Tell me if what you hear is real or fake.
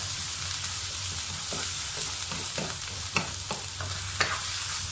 real